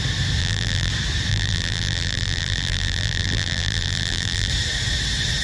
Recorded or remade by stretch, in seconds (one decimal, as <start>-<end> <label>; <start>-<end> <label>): 0.0-0.4 recorded; 0.4-0.9 remade; 0.9-1.3 recorded; 1.3-4.5 remade; 4.5-5.4 recorded